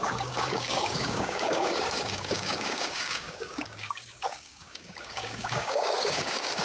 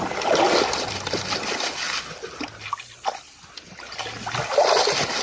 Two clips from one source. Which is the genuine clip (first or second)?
second